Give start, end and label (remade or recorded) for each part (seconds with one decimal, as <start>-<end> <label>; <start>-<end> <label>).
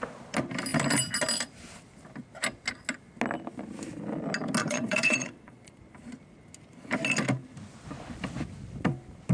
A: 0.0-4.6 recorded; 4.6-5.8 remade; 5.8-9.3 recorded